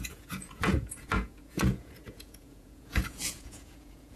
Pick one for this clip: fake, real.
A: fake